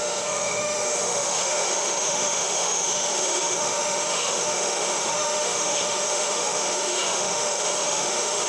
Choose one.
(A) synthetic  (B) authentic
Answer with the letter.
A